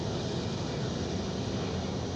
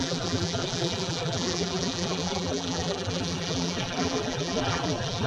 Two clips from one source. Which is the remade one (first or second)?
second